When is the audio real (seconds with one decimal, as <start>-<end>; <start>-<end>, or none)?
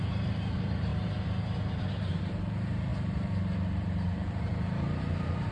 0.9-1.8